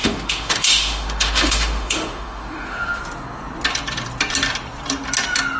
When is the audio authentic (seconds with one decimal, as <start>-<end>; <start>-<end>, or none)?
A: 3.0-5.6